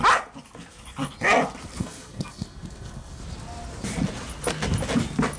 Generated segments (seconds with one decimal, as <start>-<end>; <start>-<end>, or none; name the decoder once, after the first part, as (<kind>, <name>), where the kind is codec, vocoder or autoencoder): 1.8-3.2 (codec, SNAC)